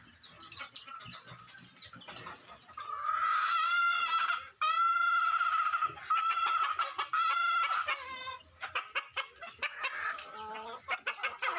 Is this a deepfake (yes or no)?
no